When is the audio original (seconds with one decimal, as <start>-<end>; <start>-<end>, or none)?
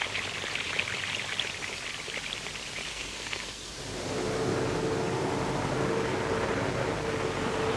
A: 0.0-2.9; 3.8-7.8